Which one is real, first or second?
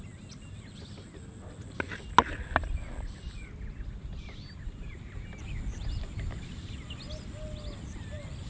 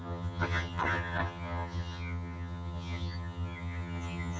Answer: first